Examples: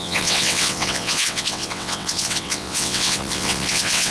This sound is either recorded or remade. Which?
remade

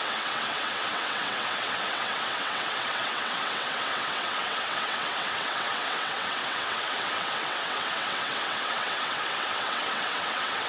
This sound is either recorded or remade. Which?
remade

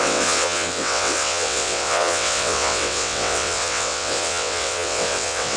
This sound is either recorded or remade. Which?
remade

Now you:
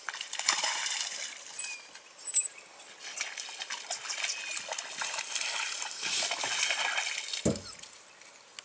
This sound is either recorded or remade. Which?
recorded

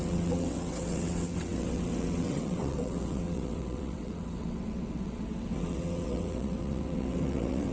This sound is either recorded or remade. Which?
remade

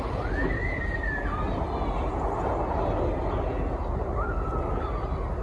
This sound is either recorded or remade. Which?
recorded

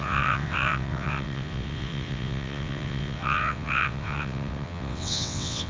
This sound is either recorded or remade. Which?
remade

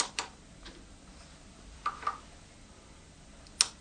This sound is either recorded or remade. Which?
recorded